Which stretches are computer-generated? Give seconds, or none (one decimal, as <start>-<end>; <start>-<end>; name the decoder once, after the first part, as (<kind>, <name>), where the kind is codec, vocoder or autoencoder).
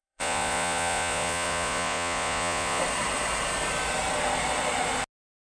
0.0-2.8 (vocoder, Vocos)